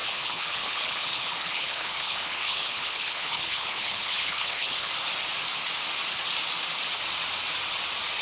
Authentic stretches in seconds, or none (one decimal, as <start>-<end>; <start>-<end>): 4.9-8.2